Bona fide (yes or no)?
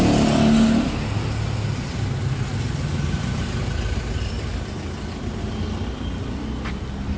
yes